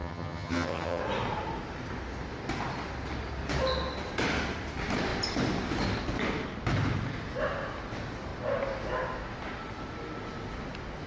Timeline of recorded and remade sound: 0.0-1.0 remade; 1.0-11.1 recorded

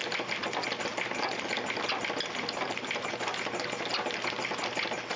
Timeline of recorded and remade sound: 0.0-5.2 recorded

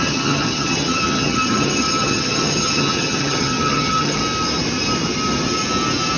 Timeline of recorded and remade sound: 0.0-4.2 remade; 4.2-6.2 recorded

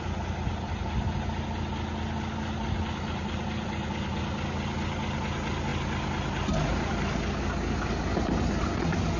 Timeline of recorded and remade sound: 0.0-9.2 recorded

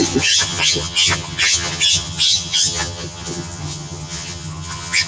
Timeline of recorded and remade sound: 0.0-5.1 remade

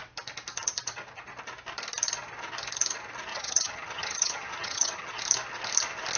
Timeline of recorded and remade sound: 0.0-3.3 recorded; 3.3-5.2 remade; 5.2-6.2 recorded